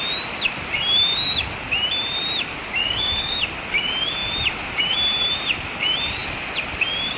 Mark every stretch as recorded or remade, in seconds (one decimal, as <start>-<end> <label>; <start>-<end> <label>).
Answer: 0.0-2.8 recorded; 2.8-3.4 remade; 3.4-7.2 recorded